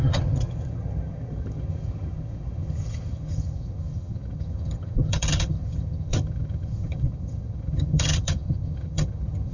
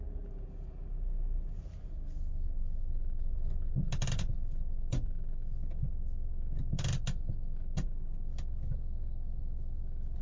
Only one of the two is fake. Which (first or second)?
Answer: first